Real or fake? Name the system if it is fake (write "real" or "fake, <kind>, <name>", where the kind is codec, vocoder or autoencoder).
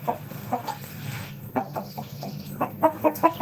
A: fake, codec, SNAC